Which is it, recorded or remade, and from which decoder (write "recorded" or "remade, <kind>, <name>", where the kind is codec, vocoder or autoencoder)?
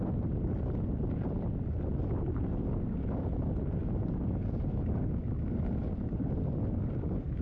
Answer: recorded